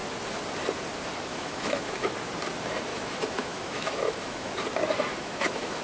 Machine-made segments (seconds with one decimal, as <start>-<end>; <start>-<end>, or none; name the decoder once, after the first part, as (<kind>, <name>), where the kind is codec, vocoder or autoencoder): 1.3-2.1 (autoencoder, DAC-VAE); 2.9-4.5; 5.1-5.8